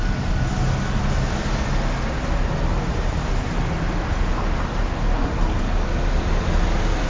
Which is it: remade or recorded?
recorded